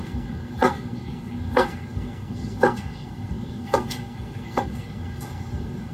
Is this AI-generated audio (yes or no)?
yes